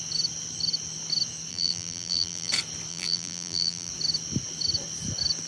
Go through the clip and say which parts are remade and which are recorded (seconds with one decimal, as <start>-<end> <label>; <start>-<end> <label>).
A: 0.0-1.5 recorded; 1.5-2.5 remade; 2.5-2.9 recorded; 2.9-3.9 remade; 3.9-5.5 recorded